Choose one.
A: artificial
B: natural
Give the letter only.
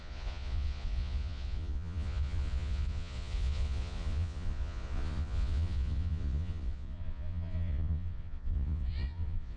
A